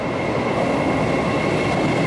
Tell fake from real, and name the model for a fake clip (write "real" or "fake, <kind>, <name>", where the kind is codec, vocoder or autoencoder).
real